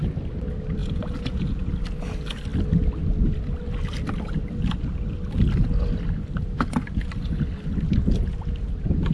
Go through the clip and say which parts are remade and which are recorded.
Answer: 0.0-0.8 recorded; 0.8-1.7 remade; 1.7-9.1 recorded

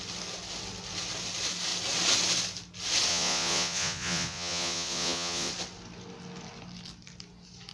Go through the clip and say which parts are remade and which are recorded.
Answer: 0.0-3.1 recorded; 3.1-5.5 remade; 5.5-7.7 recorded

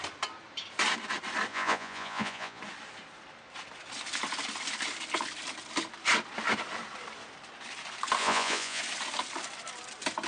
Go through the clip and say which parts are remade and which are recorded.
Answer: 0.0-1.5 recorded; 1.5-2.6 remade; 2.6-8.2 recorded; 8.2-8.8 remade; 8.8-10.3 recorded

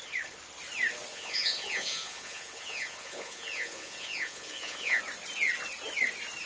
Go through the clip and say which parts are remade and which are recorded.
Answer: 0.0-1.1 recorded; 1.1-5.0 remade; 5.0-6.5 recorded

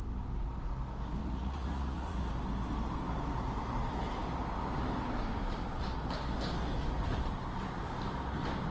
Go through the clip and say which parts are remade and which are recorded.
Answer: 0.0-1.2 recorded; 1.2-2.3 remade; 2.3-8.7 recorded

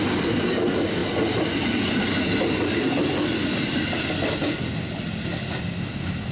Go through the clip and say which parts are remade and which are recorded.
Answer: 0.0-6.3 recorded

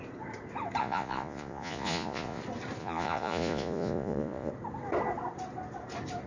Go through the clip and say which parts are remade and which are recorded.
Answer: 0.0-0.8 recorded; 0.8-2.4 remade; 2.4-2.8 recorded; 2.8-4.5 remade; 4.5-6.3 recorded